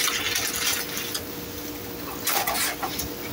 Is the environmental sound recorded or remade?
recorded